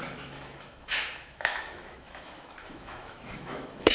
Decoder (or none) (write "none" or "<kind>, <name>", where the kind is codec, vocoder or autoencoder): autoencoder, DAC-VAE